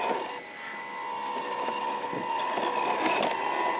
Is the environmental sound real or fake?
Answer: real